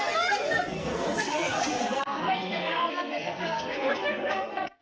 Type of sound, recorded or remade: remade